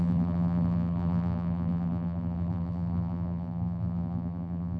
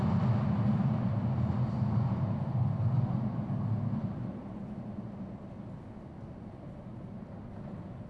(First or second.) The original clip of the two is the second